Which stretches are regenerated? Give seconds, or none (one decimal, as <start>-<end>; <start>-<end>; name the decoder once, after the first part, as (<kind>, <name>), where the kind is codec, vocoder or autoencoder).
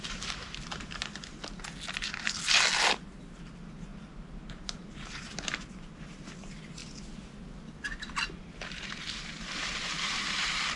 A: 0.0-1.0 (vocoder, BigVGAN v2); 3.2-3.9; 4.5-6.8; 8.4-10.8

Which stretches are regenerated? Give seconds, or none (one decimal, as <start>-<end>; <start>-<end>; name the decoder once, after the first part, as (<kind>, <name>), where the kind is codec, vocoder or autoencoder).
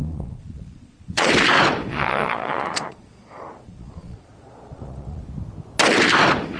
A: 0.0-1.3 (vocoder, Vocos); 1.9-5.2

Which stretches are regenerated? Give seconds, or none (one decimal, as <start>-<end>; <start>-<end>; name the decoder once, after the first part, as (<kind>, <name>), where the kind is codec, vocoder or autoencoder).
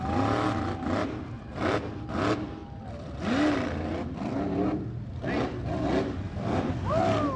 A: none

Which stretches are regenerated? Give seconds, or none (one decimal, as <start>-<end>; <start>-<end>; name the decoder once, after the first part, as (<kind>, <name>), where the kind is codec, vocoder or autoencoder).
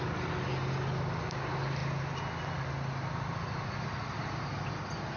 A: none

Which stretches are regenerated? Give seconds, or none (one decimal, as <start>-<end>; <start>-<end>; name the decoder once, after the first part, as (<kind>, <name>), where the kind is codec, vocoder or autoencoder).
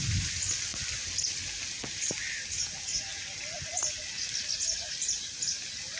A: none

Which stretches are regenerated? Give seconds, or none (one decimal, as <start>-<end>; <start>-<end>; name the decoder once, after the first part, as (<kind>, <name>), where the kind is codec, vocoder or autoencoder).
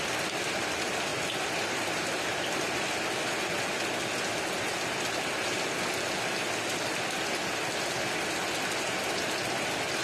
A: none